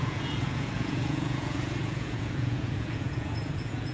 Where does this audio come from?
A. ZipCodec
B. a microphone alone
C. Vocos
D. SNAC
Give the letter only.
C